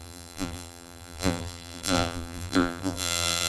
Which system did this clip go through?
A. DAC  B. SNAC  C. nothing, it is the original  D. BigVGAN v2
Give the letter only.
D